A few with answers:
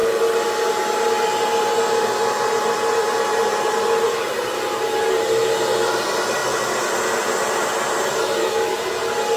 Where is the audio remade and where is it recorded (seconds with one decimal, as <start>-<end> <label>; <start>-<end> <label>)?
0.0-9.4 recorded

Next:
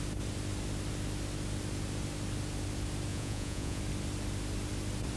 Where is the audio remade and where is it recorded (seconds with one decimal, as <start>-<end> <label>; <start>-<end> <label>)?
0.0-3.1 recorded; 3.1-3.8 remade; 3.8-5.2 recorded

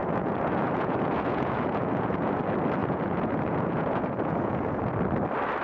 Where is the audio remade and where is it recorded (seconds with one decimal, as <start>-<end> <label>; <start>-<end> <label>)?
0.0-2.4 remade; 2.4-2.8 recorded; 2.8-4.9 remade; 4.9-5.6 recorded

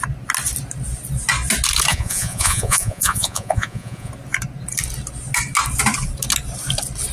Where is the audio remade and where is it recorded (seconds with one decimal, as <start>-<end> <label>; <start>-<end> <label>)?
0.0-1.9 recorded; 1.9-4.1 remade; 4.1-7.1 recorded

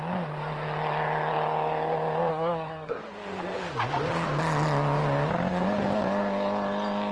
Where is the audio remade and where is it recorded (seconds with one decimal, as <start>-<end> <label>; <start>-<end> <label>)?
0.0-2.3 recorded; 2.3-3.0 remade; 3.0-7.1 recorded

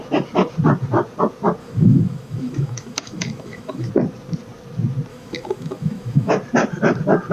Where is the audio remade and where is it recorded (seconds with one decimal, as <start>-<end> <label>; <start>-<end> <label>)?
0.0-1.6 recorded; 1.6-3.9 remade; 3.9-5.1 recorded; 5.1-6.3 remade; 6.3-7.3 recorded

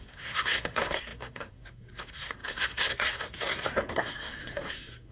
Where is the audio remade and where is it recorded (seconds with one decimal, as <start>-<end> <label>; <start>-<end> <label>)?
0.0-5.1 remade

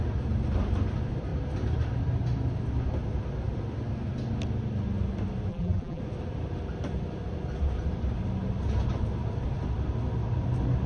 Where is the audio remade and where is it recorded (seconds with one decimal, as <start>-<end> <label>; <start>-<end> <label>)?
0.0-5.5 recorded; 5.5-6.0 remade; 6.0-10.9 recorded